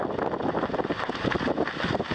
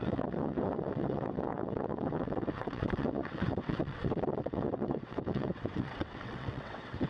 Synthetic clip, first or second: second